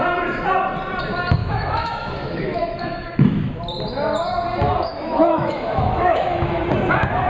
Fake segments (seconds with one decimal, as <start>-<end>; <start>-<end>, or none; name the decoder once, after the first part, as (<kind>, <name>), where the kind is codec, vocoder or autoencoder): 1.4-3.5 (autoencoder, DAC-VAE); 4.9-6.6